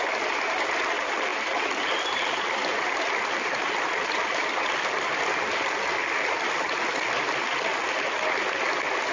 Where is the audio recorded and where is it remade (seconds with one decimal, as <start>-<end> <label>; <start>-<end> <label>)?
0.0-9.1 recorded